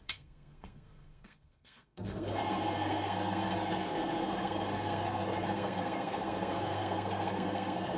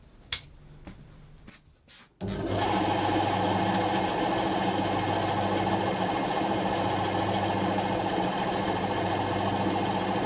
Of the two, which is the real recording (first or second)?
second